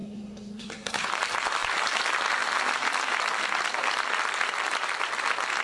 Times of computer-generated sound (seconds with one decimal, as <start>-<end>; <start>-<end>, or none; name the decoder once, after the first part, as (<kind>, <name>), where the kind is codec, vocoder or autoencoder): 0.0-1.1 (codec, SNAC)